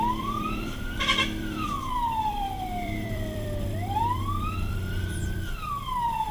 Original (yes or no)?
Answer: no